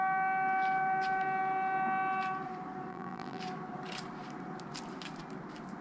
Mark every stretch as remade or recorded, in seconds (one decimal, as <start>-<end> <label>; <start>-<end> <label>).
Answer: 0.0-2.9 recorded; 2.9-3.4 remade; 3.4-5.8 recorded